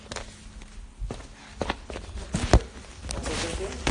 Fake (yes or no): no